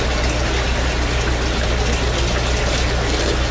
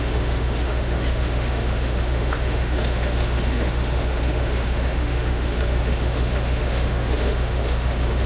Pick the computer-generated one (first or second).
second